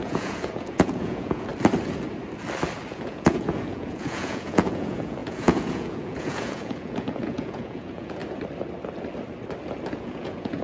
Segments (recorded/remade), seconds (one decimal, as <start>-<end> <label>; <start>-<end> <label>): 0.0-1.5 remade; 1.5-2.9 recorded; 2.9-8.2 remade; 8.2-9.9 recorded; 9.9-10.6 remade